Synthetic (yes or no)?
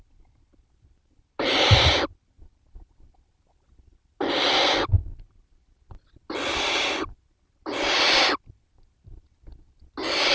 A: no